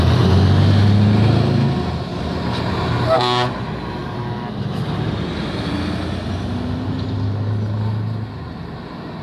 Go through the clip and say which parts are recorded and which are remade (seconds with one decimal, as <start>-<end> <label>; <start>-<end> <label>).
0.0-9.2 recorded